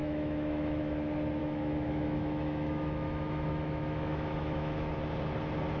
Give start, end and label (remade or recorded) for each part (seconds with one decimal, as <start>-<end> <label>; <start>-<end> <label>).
0.0-0.8 remade; 0.8-1.4 recorded; 1.4-4.9 remade; 4.9-5.8 recorded